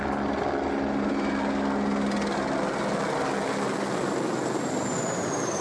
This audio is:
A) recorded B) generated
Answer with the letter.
A